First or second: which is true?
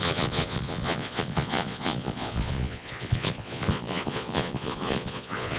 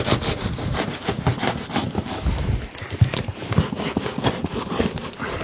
second